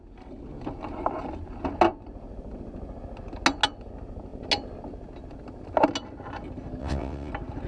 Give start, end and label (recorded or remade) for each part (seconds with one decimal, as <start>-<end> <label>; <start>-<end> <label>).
0.0-6.8 recorded; 6.8-7.3 remade; 7.3-7.7 recorded